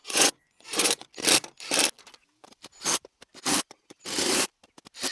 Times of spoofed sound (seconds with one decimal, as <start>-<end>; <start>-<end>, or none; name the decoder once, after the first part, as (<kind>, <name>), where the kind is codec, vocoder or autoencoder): 0.0-1.1 (vocoder, Vocos)